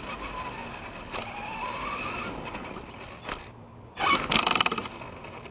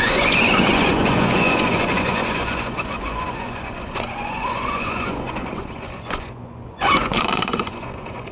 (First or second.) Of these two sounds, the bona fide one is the first